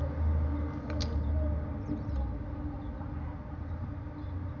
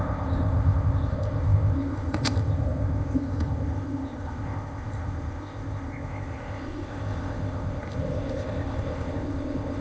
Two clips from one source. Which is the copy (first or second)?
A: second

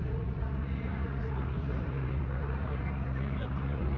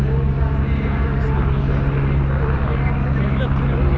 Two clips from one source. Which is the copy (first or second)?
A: first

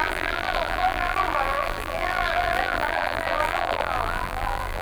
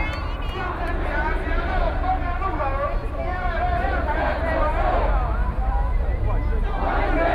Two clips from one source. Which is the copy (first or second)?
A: first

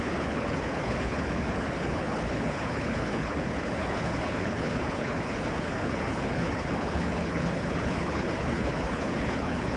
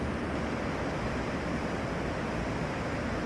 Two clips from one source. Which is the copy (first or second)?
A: first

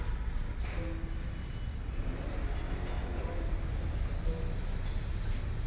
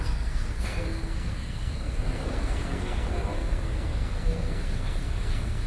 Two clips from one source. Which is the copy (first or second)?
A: second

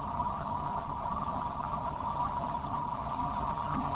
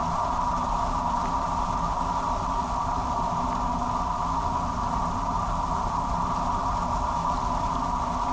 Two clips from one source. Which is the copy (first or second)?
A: first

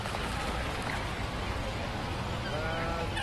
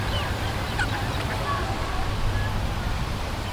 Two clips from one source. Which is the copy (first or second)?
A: second